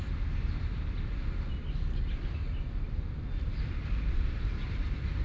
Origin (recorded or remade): recorded